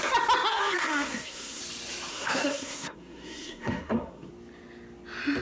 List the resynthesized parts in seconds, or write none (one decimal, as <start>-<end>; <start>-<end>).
0.5-1.6; 2.1-4.3